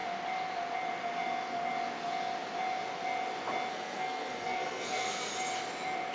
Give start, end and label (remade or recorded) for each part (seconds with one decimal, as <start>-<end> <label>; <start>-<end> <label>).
0.0-3.7 recorded; 3.7-5.3 remade; 5.3-6.1 recorded